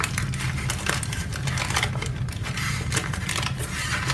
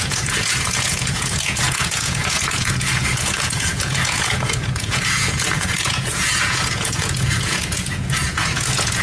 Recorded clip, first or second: first